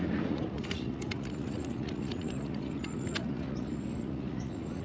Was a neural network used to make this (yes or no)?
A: yes